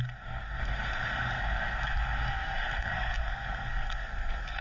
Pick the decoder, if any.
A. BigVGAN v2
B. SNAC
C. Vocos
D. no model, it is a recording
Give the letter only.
B